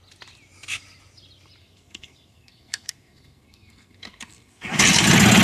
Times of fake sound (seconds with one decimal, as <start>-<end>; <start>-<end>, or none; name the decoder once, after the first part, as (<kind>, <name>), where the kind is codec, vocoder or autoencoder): 1.6-4.8 (codec, SNAC)